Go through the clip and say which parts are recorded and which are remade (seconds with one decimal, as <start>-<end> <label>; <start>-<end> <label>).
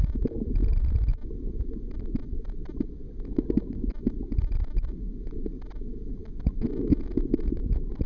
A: 0.0-8.1 recorded